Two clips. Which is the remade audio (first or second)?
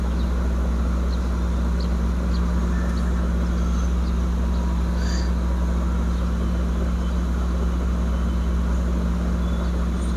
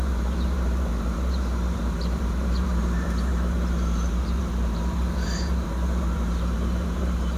second